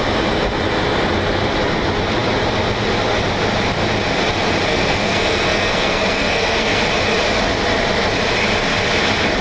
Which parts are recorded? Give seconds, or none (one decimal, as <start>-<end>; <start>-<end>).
0.0-4.7; 6.8-9.4